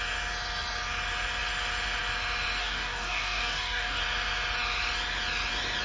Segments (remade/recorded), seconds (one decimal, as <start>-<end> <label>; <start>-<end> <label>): 0.0-2.6 recorded; 2.6-4.0 remade; 4.0-5.8 recorded